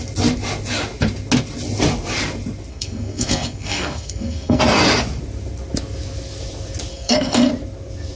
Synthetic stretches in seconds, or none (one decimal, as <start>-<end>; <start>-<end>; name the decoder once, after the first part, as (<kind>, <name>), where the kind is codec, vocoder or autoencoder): 2.7-4.6 (codec, SNAC); 6.9-7.5